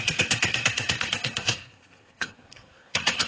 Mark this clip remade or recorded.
remade